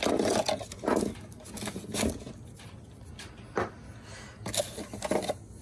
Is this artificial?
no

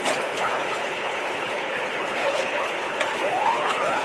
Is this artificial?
yes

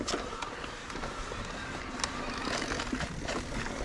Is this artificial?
no